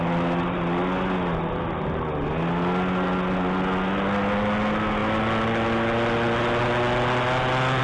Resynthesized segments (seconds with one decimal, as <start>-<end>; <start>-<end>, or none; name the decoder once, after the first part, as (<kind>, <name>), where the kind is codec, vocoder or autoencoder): none